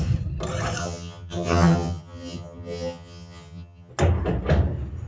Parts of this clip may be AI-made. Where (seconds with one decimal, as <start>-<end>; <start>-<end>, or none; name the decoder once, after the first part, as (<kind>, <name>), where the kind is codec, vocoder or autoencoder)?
0.8-3.9 (vocoder, HiFi-GAN)